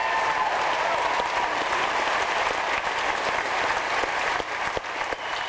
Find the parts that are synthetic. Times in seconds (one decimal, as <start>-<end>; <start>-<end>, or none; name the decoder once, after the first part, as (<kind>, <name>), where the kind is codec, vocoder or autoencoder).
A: none

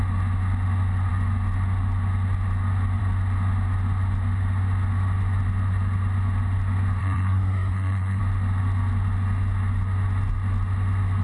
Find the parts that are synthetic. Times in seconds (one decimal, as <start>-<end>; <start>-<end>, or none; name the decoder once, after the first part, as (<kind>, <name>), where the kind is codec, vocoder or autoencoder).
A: 7.0-8.2 (codec, SNAC)

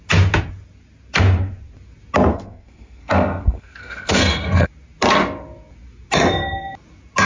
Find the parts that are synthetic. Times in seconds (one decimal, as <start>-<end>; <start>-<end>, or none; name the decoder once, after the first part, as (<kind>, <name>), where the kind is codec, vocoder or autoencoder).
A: 2.3-4.7 (codec, SNAC)

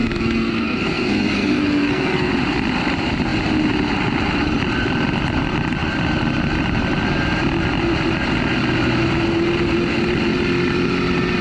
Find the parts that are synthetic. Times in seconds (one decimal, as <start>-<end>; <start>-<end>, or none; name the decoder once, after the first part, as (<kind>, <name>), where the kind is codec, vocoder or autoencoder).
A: 0.0-2.3 (codec, SNAC)

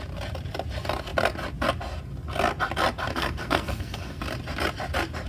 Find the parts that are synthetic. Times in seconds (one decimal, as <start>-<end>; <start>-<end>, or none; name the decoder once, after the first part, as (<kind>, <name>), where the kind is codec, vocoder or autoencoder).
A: 3.1-4.2 (codec, SNAC)

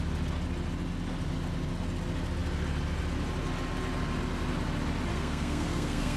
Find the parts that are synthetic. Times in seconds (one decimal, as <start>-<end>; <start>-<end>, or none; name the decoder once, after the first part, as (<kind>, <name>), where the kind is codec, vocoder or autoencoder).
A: 5.1-6.2 (codec, SNAC)

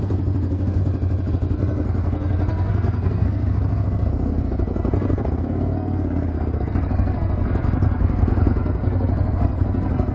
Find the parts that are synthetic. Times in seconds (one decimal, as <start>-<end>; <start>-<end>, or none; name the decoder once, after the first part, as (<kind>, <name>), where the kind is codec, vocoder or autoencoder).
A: 0.0-0.8 (codec, SNAC); 1.3-10.1

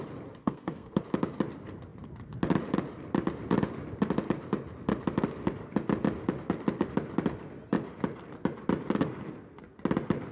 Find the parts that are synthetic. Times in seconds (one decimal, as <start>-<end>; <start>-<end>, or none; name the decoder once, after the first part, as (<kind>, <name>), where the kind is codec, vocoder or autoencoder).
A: 0.4-1.0 (codec, SNAC)